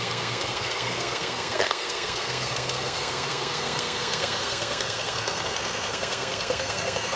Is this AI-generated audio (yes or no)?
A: yes